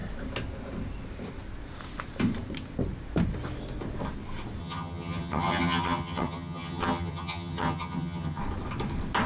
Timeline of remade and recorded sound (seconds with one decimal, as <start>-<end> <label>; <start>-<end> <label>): 0.0-4.6 recorded; 4.6-8.4 remade; 8.4-9.3 recorded